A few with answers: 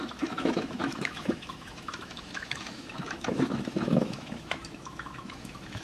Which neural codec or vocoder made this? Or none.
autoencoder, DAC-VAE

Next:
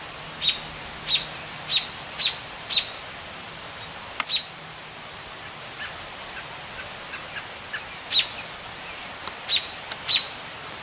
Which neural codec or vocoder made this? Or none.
none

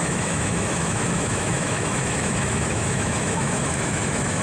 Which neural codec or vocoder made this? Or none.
autoencoder, DAC-VAE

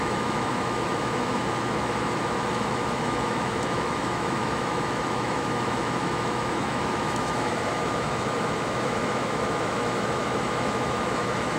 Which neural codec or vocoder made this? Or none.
autoencoder, DAC-VAE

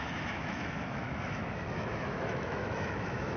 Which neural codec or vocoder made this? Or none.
autoencoder, DAC-VAE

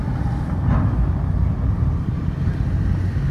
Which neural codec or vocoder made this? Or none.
none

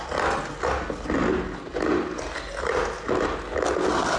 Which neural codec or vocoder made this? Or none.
none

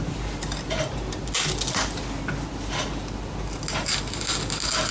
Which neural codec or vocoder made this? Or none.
none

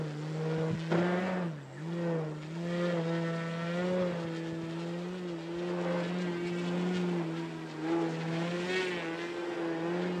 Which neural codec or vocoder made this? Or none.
none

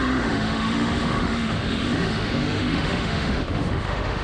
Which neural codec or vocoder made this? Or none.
autoencoder, DAC-VAE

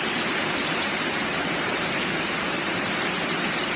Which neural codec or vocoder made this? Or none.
none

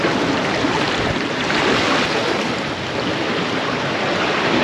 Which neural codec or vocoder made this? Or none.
none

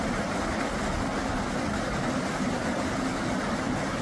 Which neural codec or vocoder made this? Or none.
none